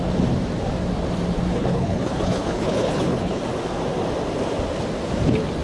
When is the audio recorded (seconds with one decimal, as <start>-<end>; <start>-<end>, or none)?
0.0-1.5; 3.4-5.6